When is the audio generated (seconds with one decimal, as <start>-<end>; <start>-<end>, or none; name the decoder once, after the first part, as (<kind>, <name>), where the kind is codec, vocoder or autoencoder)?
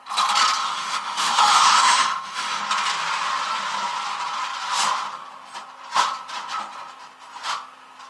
0.6-2.6 (autoencoder, DAC-VAE)